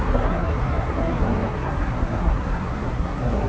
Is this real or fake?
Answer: fake